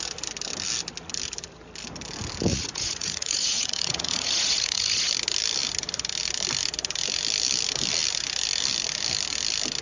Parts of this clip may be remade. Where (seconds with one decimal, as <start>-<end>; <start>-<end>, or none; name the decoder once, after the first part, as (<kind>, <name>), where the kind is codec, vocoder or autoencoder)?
2.5-5.1 (vocoder, Vocos)